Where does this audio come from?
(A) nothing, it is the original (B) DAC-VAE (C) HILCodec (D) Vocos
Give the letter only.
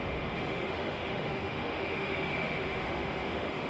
B